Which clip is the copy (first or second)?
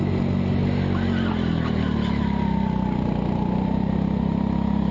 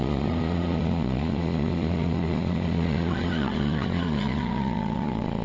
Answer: second